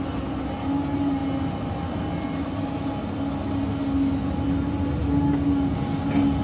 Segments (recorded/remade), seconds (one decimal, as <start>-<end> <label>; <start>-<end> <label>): 0.0-6.4 recorded